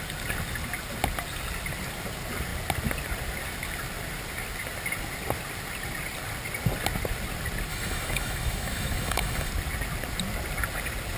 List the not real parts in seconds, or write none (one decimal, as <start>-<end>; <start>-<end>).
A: 7.7-9.5